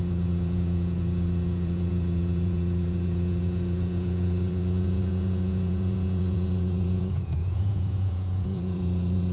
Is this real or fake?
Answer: fake